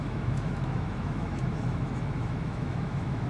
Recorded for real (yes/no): no